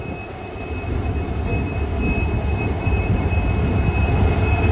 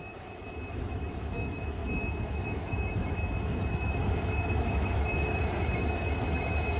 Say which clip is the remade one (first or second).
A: second